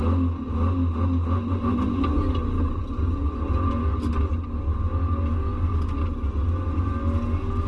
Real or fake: real